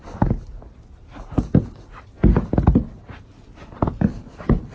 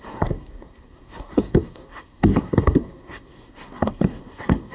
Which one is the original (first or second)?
first